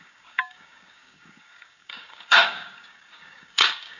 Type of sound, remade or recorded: remade